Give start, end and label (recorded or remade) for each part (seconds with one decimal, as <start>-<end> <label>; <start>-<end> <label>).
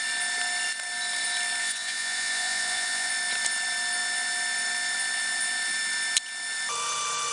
0.0-1.6 recorded; 1.6-3.1 remade; 3.1-7.3 recorded